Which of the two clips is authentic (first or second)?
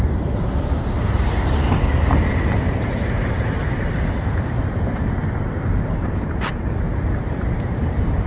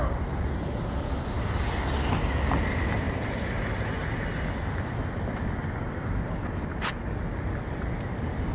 second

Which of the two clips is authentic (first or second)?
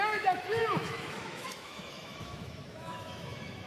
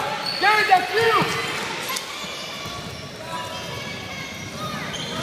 second